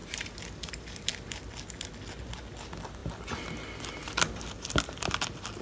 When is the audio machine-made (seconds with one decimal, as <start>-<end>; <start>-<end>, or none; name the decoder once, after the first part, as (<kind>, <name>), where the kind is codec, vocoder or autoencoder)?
none